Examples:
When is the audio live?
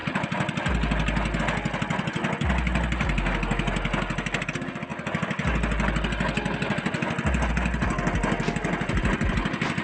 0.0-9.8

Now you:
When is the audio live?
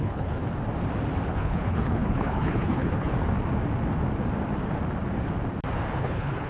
0.4-1.3; 3.1-6.0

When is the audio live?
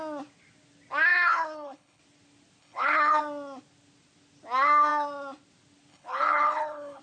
0.0-1.1; 2.0-2.6; 3.2-5.9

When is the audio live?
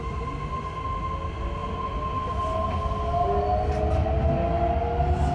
0.0-5.3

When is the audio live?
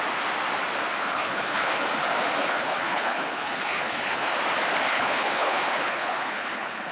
0.0-1.0; 1.8-2.4; 4.4-4.9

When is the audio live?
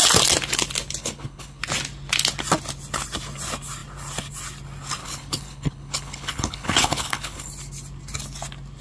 0.0-1.0; 1.6-5.0; 7.5-8.8